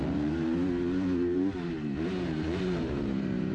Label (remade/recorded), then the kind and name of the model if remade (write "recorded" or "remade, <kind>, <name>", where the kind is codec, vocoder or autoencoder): remade, vocoder, BigVGAN v2